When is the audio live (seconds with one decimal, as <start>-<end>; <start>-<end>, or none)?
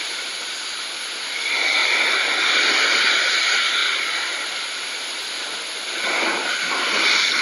0.0-7.4